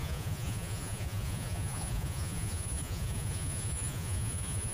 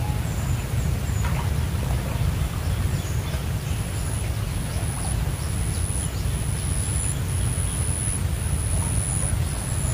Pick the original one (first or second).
second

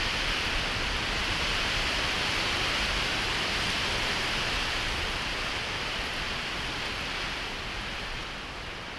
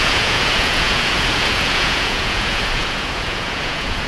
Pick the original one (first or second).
first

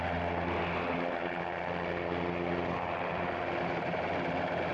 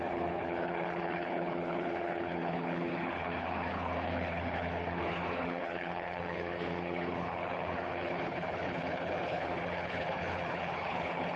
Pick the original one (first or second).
first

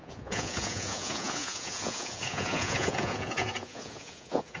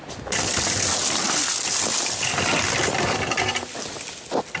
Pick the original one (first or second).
second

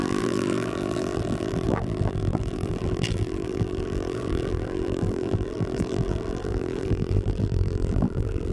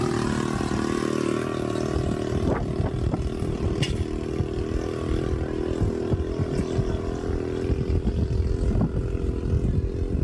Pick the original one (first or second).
second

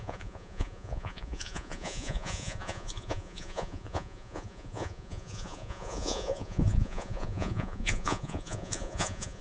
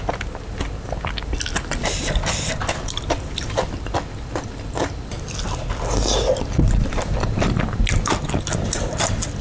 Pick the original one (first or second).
second